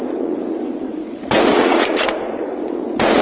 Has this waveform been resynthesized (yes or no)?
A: yes